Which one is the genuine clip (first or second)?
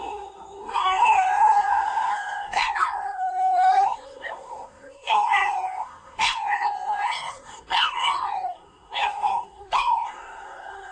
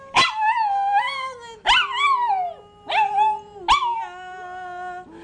second